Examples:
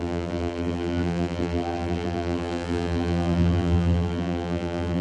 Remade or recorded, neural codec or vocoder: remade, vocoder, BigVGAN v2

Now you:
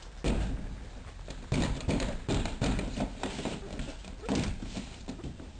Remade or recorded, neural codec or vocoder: recorded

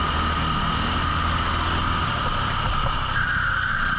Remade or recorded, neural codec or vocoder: recorded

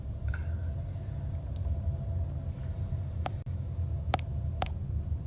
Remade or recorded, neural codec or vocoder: recorded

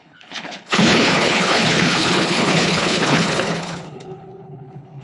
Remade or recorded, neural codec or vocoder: remade, codec, HILCodec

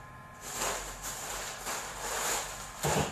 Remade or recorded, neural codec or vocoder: recorded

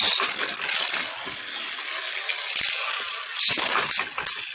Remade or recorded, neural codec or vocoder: recorded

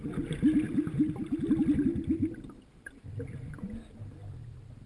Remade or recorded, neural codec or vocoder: recorded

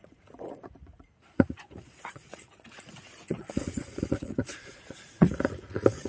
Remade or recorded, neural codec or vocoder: remade, vocoder, Vocos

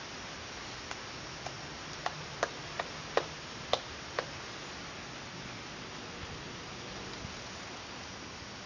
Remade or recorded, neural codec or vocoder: recorded